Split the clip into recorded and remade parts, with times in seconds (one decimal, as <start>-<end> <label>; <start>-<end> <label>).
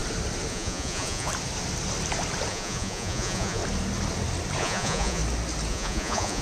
0.0-0.5 recorded; 0.5-1.3 remade; 1.3-2.5 recorded; 2.5-3.6 remade; 3.6-4.6 recorded; 4.6-5.2 remade; 5.2-5.7 recorded; 5.7-6.4 remade